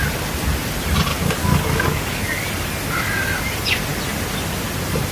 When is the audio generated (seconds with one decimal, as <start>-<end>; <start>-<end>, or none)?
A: 1.1-2.5